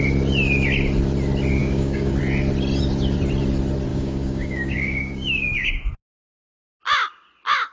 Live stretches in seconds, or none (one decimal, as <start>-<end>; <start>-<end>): 0.0-1.6; 2.2-3.9; 5.7-7.7

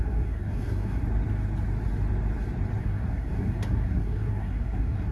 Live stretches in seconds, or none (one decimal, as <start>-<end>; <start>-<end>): 1.0-2.8

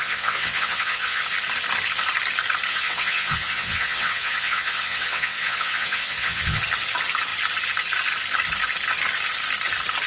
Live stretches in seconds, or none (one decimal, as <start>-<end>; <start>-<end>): 1.2-2.7; 6.6-10.1

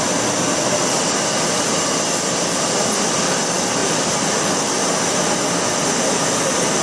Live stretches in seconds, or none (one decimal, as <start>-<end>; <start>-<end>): 0.0-3.8; 4.6-6.8